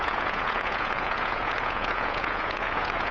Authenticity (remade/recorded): remade